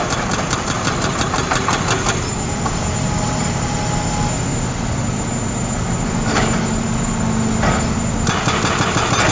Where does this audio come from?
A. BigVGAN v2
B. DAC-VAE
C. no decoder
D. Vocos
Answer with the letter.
C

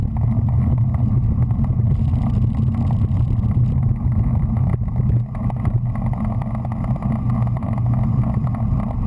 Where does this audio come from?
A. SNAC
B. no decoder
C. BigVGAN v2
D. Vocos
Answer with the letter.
B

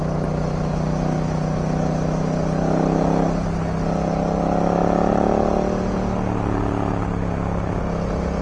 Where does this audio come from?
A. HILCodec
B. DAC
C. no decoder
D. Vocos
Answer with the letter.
C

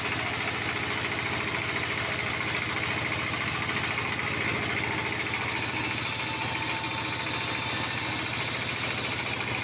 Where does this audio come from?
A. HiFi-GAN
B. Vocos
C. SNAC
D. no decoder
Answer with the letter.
D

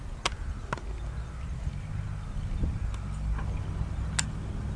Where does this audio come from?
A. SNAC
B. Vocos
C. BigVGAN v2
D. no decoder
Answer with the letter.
D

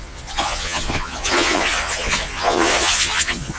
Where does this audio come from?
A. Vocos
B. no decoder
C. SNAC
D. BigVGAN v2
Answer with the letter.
A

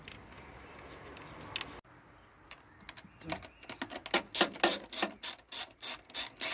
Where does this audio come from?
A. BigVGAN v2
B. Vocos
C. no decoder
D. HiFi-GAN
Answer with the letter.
C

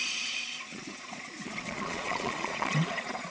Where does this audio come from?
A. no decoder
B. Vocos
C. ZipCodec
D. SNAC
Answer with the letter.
B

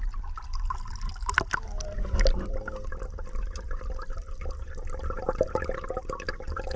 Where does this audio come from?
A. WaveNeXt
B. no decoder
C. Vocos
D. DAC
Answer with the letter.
B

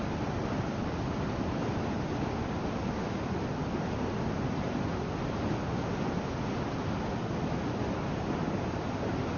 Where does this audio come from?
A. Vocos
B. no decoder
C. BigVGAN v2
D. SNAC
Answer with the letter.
B